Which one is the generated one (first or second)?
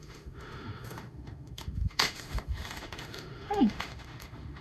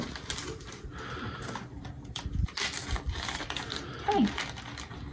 first